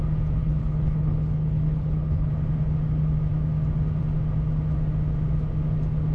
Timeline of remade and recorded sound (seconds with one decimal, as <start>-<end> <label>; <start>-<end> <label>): 0.0-0.4 recorded; 0.4-2.3 remade; 2.3-6.1 recorded